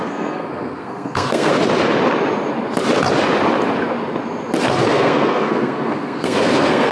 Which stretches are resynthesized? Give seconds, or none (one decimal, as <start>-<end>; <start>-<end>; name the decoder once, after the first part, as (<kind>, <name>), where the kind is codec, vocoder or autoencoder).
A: 0.0-1.5 (codec, SNAC); 4.6-6.9